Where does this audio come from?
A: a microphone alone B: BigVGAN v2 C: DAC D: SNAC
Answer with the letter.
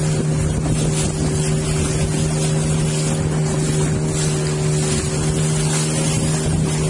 A